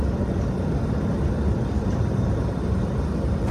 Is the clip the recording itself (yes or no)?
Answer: yes